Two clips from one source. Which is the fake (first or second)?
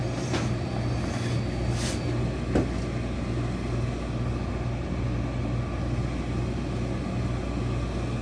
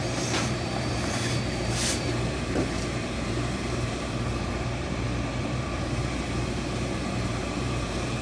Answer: second